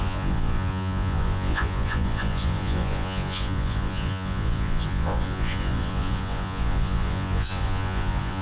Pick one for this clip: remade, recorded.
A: remade